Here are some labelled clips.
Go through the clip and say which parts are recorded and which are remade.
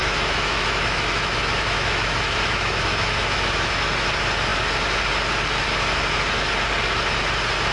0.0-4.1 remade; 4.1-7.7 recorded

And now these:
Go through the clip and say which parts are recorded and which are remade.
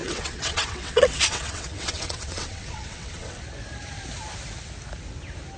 0.0-3.4 remade; 3.4-5.6 recorded